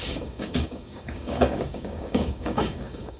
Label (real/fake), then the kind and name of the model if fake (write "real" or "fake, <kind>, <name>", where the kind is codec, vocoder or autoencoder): fake, codec, DAC